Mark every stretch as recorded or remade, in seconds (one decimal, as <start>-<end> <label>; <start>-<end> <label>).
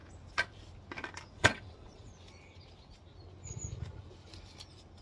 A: 0.0-1.3 recorded; 1.3-2.1 remade; 2.1-5.0 recorded